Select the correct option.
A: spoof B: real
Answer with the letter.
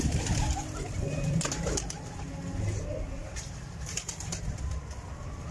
B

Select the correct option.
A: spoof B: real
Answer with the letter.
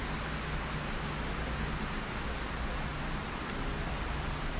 B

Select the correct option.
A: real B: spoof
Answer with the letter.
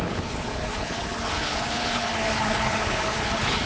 B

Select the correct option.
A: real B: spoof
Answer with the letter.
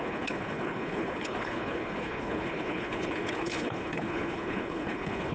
B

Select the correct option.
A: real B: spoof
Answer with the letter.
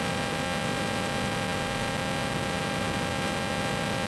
A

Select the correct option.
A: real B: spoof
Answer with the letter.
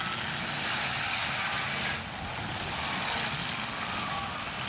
A